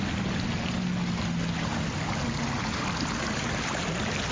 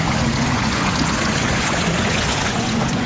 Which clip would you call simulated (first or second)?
second